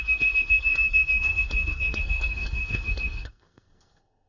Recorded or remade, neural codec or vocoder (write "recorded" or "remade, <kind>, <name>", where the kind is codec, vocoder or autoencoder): remade, codec, SNAC